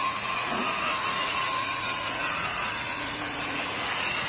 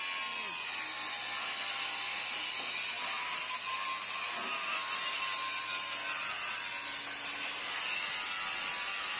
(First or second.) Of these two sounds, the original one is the second